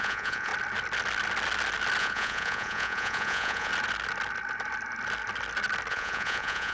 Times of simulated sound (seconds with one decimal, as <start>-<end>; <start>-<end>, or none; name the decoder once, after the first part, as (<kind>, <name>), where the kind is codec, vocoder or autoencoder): 0.0-0.5 (vocoder, Vocos); 2.0-3.7; 5.9-6.7